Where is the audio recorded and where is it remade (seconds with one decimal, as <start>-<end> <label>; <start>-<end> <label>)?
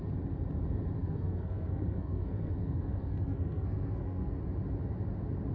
0.0-1.0 recorded; 1.0-4.3 remade; 4.3-5.5 recorded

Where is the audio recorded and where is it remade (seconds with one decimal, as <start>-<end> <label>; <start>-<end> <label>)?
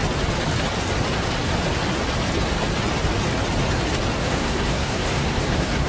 0.0-4.2 recorded; 4.2-5.9 remade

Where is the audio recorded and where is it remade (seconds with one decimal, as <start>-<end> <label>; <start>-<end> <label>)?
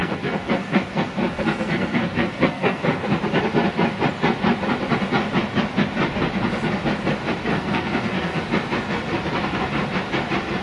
0.0-3.2 remade; 3.2-7.5 recorded; 7.5-8.4 remade; 8.4-10.6 recorded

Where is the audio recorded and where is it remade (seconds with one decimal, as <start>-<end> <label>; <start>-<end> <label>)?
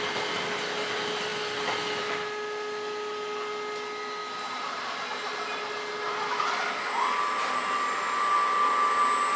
0.0-4.2 recorded; 4.2-9.4 remade